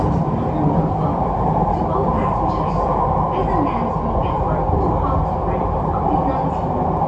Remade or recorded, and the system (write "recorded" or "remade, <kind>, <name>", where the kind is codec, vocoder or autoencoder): recorded